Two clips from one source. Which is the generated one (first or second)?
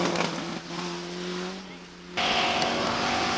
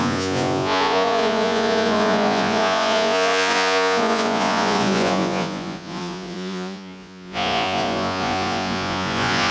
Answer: second